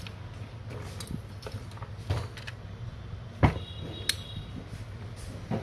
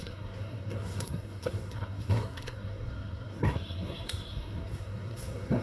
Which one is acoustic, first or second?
first